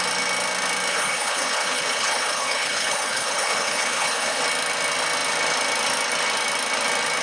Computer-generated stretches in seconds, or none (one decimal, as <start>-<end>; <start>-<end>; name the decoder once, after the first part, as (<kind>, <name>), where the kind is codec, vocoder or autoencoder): 0.9-4.4 (codec, HILCodec)